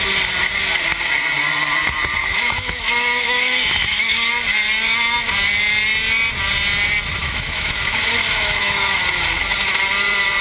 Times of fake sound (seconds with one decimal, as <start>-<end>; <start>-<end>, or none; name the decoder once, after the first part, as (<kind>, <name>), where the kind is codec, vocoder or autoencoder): 2.2-4.3 (autoencoder, DAC-VAE); 7.2-9.0